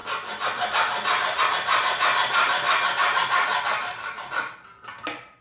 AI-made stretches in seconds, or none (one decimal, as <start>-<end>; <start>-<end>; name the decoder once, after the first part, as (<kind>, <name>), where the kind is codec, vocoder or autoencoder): none